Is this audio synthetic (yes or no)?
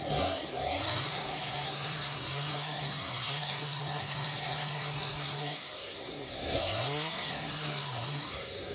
yes